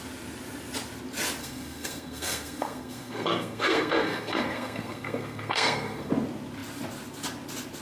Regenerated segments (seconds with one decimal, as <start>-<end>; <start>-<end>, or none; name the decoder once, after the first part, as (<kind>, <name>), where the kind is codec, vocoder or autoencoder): 1.4-6.1 (codec, SNAC)